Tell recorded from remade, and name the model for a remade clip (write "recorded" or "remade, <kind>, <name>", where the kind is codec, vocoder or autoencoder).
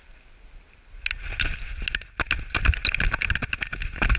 recorded